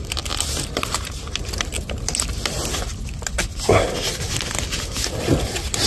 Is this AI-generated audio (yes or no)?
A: no